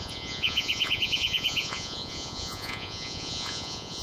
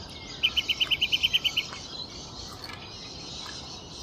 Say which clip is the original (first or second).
second